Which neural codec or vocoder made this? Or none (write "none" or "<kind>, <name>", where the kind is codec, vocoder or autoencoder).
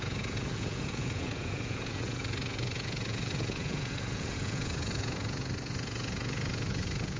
vocoder, Vocos